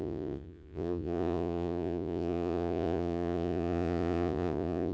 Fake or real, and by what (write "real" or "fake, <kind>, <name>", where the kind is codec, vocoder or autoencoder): fake, vocoder, Vocos